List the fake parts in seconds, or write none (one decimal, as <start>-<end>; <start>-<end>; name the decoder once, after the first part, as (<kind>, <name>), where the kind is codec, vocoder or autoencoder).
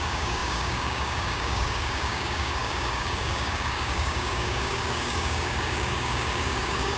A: 0.0-7.0 (codec, DAC)